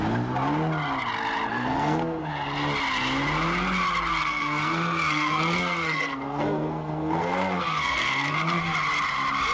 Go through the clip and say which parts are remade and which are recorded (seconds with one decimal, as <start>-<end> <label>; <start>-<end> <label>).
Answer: 0.0-1.5 recorded; 1.5-2.2 remade; 2.2-4.1 recorded; 4.1-8.6 remade; 8.6-9.5 recorded